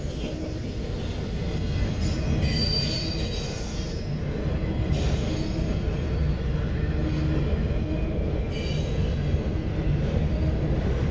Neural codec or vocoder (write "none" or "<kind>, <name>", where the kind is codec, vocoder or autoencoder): none